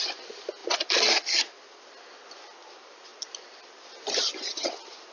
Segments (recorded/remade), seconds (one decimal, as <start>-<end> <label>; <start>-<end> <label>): 0.0-5.1 recorded